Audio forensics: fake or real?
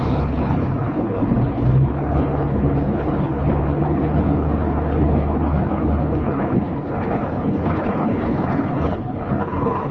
fake